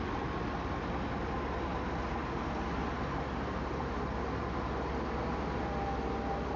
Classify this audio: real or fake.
real